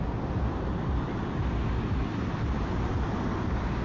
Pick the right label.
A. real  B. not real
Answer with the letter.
A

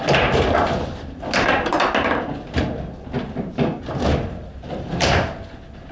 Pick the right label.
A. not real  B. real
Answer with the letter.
B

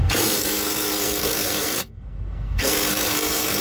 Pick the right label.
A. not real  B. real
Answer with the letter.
A